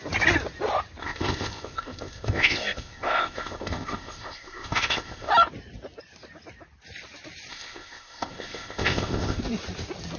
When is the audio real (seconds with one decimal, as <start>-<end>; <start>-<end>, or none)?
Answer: 0.0-1.0; 5.3-7.5; 9.4-10.2

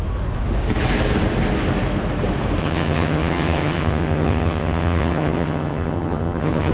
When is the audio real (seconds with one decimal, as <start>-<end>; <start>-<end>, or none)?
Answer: 0.0-2.6

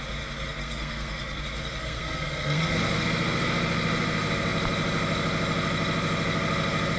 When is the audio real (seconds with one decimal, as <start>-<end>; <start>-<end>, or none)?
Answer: 0.0-0.6; 1.4-1.8; 2.8-7.0

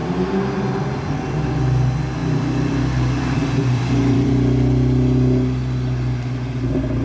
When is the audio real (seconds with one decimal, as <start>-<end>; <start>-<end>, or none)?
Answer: 0.0-2.2; 4.3-7.0

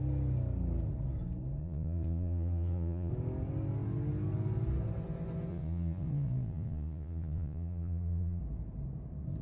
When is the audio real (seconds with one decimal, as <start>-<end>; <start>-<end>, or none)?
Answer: 0.0-1.6; 3.1-5.5; 8.4-9.4

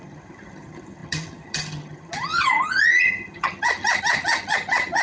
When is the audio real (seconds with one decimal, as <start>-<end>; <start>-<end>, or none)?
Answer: none

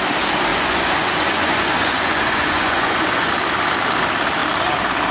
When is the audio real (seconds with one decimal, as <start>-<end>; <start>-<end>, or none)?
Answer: 0.0-0.5; 3.3-5.1